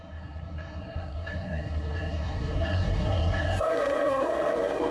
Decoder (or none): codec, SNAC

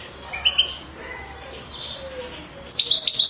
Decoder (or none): none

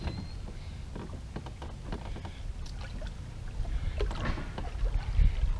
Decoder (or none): none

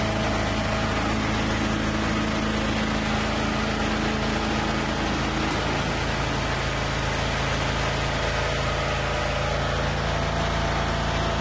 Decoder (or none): none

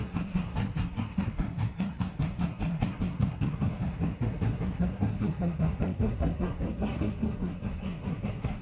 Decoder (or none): codec, SNAC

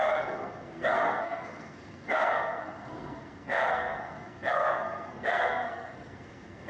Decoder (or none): codec, SNAC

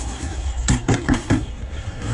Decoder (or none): codec, SNAC